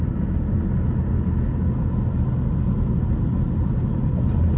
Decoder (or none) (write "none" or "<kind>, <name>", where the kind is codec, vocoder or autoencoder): none